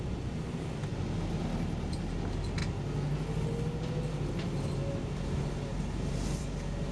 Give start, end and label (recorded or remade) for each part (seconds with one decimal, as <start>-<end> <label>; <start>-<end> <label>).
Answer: 0.0-6.9 recorded